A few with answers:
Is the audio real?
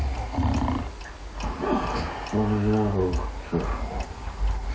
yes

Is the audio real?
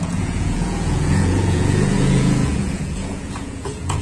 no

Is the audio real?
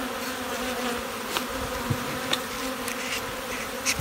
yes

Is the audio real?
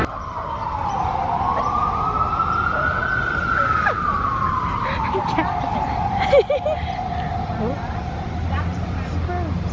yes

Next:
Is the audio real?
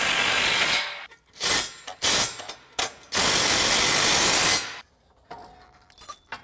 yes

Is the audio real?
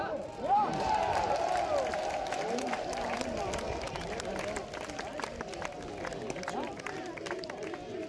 yes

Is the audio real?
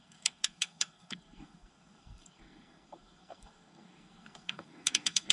no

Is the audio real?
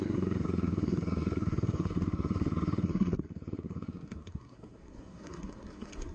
no